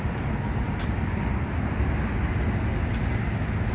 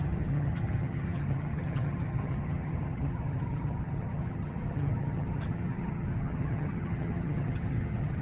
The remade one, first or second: second